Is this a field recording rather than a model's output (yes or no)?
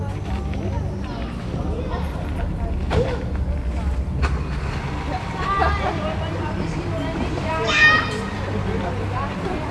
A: yes